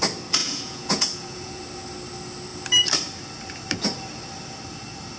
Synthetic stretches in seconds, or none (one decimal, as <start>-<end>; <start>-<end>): 0.4-1.6